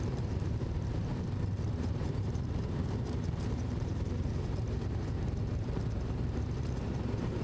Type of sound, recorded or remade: remade